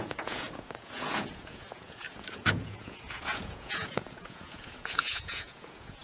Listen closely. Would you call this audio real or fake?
fake